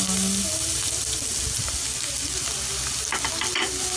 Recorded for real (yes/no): yes